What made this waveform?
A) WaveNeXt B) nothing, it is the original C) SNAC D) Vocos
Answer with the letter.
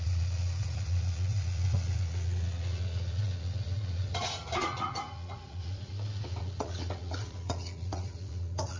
D